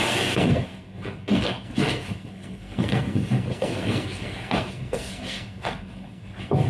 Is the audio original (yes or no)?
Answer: no